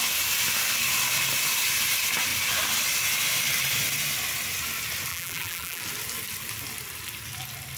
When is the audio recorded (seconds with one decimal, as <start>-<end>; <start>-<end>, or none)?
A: 0.0-5.1; 5.8-7.8

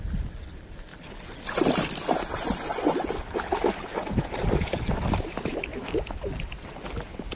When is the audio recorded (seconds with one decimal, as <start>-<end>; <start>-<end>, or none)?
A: 0.0-5.7; 6.2-7.4